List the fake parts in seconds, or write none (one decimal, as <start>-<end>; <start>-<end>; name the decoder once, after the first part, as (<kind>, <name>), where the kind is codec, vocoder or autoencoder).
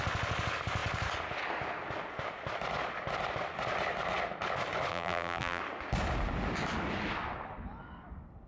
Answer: 4.9-5.6 (vocoder, BigVGAN v2)